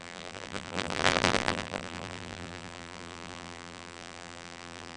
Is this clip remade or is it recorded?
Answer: remade